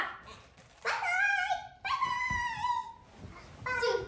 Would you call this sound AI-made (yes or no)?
no